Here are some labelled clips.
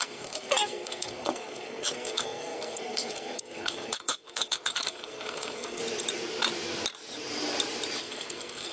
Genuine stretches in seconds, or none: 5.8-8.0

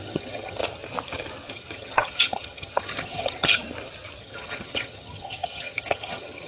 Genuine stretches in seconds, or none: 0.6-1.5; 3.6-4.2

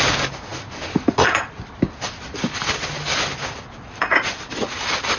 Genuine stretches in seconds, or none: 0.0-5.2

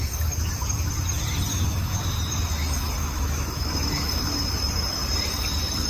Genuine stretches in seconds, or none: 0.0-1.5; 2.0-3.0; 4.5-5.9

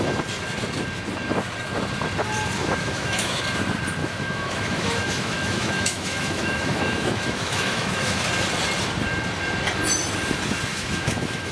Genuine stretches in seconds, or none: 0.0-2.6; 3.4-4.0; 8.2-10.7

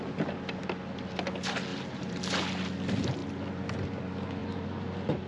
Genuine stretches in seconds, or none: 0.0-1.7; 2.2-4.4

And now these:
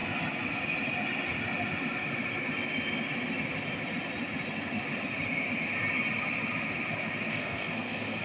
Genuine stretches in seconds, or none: 0.0-7.3

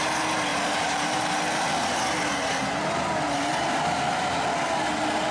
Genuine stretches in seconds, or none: 0.0-5.3